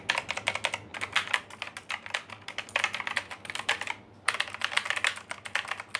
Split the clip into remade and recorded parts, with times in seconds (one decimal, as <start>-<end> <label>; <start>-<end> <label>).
0.0-6.0 recorded